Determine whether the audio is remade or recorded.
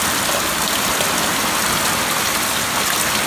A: recorded